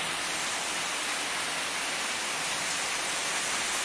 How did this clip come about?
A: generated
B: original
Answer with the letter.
B